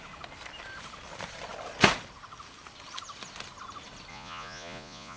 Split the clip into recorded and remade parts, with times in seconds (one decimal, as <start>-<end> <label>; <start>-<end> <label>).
0.0-4.1 recorded; 4.1-5.2 remade